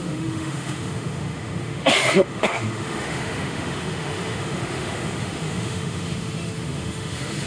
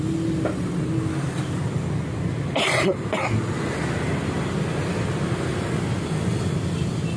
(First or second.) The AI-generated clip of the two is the first